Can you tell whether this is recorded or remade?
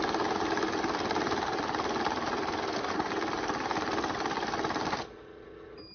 recorded